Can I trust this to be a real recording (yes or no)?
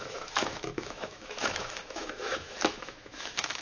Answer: no